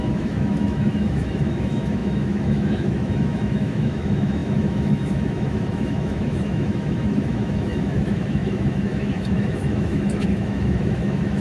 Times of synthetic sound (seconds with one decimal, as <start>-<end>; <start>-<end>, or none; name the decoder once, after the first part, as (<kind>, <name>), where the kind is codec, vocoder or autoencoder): 0.0-11.4 (autoencoder, DAC-VAE)